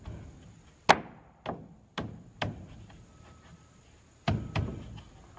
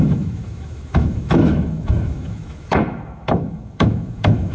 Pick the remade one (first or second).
second